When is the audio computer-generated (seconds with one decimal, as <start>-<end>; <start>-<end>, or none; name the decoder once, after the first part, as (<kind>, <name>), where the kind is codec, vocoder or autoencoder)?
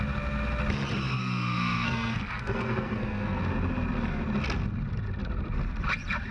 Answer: 1.2-3.4 (codec, SNAC)